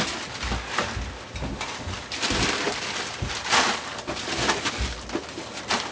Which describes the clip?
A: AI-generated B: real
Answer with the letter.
B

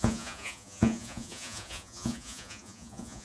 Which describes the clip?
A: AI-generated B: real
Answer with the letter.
A